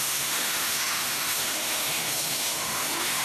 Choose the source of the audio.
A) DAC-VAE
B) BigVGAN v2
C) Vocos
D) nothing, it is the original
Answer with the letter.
A